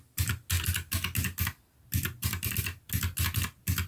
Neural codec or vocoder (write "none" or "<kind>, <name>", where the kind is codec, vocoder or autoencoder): none